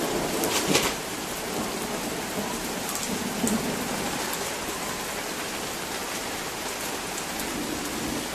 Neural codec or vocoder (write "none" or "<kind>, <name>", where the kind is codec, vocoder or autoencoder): none